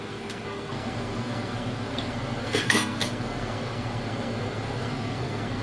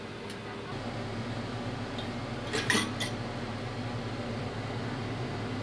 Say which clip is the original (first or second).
second